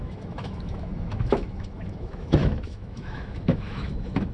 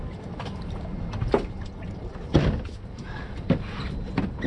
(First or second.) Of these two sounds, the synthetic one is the first